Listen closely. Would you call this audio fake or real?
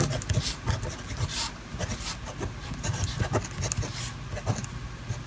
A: real